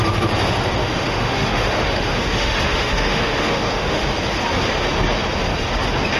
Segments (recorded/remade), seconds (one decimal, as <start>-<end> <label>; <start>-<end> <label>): 0.0-0.8 recorded; 0.8-4.0 remade; 4.0-6.2 recorded